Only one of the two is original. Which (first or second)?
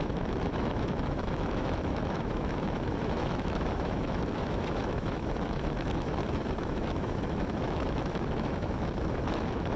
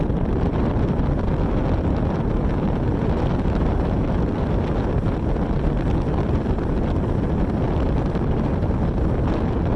second